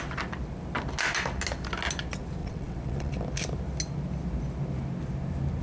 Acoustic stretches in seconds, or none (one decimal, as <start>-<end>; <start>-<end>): 0.0-2.4; 3.1-5.6